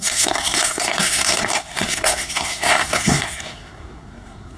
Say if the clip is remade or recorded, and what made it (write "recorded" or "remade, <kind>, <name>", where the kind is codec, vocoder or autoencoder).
remade, codec, SNAC